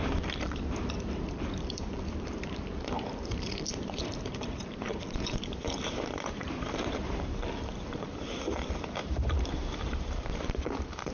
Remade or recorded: remade